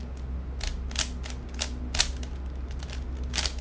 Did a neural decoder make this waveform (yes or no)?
no